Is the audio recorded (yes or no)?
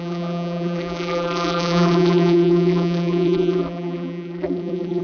no